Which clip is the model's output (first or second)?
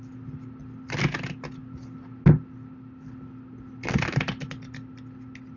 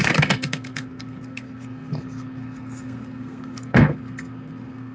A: second